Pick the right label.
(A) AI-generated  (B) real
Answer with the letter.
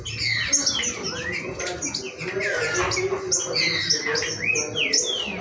B